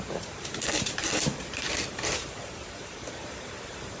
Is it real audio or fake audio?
fake